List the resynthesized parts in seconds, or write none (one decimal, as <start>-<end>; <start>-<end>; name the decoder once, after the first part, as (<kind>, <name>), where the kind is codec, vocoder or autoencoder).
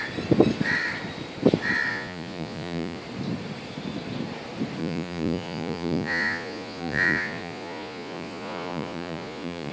1.9-3.0 (vocoder, Vocos); 4.8-9.7